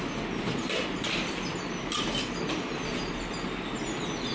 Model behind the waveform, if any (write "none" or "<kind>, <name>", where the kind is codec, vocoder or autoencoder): none